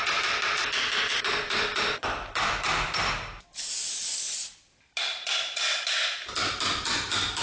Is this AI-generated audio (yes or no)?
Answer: no